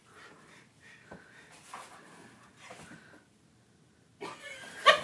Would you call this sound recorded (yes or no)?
yes